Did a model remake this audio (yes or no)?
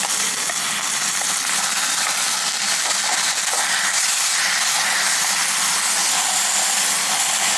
no